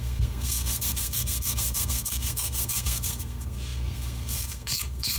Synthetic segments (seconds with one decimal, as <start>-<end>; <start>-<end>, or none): 0.0-5.2